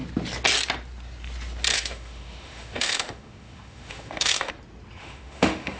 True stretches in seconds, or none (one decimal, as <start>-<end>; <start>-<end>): 0.0-1.7; 4.5-5.0